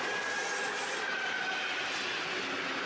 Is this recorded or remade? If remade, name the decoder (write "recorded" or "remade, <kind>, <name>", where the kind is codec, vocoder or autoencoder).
recorded